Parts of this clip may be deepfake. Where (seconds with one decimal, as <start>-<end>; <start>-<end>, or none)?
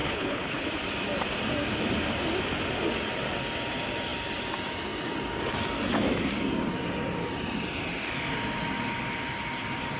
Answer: 0.0-0.7